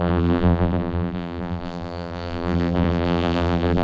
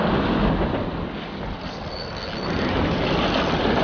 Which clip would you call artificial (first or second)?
first